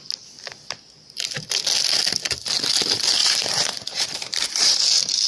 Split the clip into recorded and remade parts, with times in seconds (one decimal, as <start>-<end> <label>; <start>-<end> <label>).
0.0-3.2 recorded; 3.2-4.8 remade; 4.8-5.3 recorded